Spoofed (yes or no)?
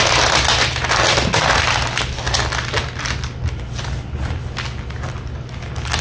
no